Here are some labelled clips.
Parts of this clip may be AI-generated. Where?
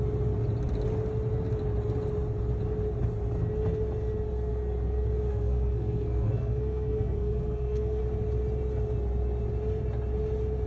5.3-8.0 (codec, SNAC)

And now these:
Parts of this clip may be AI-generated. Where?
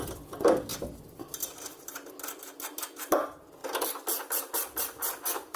none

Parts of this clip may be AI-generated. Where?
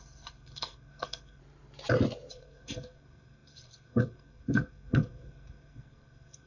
0.0-1.4 (codec, SNAC); 2.3-6.5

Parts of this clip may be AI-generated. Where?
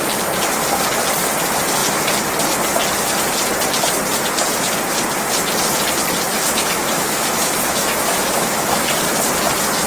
6.3-8.9 (autoencoder, DAC-VAE)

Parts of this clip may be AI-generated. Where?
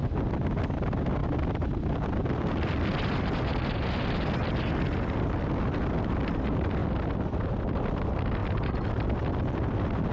1.2-3.6 (vocoder, BigVGAN v2); 8.4-9.2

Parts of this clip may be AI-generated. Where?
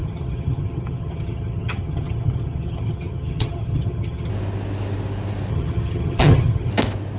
0.0-4.3 (vocoder, HiFi-GAN); 5.5-6.7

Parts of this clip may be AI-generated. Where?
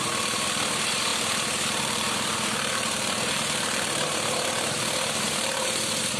0.0-6.2 (vocoder, BigVGAN v2)